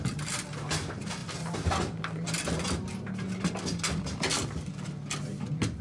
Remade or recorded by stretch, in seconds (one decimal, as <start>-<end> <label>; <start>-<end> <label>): 0.0-5.8 recorded